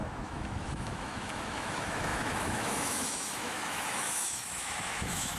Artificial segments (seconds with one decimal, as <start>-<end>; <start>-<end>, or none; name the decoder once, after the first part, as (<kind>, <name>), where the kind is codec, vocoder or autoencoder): 0.0-5.4 (autoencoder, DAC-VAE)